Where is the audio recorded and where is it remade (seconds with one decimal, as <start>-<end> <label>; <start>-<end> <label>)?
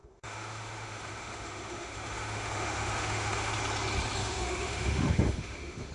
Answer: 0.0-3.5 remade; 3.5-4.2 recorded; 4.2-5.9 remade